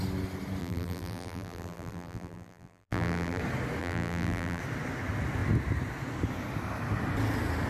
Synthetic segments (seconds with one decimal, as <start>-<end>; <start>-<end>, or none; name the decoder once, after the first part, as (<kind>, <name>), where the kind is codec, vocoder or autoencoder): 0.6-3.4 (vocoder, BigVGAN v2); 3.8-4.6